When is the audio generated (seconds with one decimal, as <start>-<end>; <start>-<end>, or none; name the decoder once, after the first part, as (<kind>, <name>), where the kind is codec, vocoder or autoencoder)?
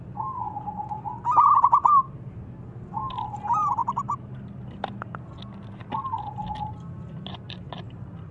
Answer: none